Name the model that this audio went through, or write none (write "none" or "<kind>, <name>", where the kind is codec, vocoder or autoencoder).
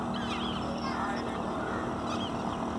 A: none